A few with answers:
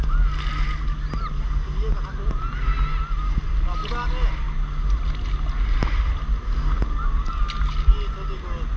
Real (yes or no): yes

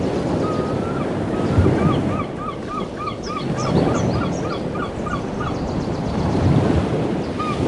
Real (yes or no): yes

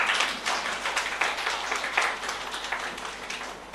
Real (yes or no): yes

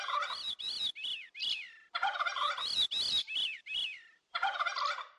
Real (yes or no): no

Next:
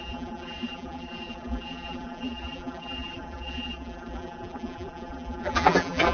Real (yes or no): no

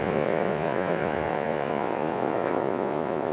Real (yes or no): no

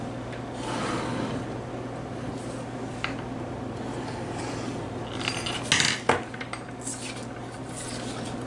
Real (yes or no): yes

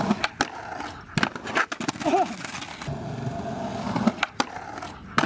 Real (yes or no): yes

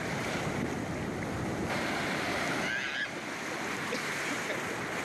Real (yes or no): yes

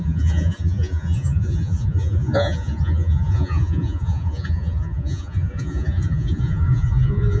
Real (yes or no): no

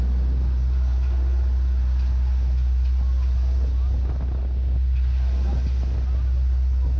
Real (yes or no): yes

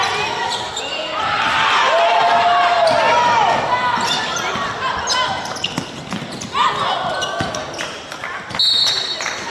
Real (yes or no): yes